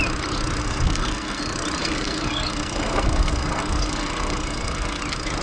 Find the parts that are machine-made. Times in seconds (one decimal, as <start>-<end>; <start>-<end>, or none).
0.6-1.4; 1.8-5.0